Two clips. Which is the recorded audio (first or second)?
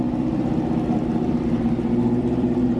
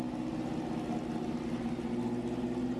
second